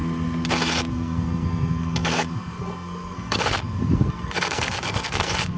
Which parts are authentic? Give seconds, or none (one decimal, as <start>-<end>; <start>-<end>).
0.0-0.9